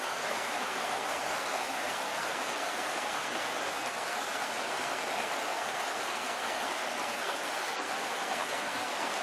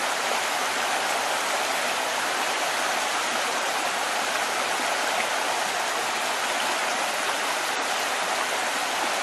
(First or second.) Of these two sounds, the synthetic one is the first